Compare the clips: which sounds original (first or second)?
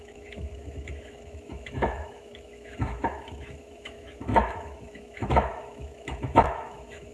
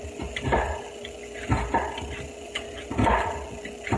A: second